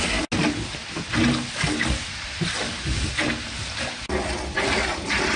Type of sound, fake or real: real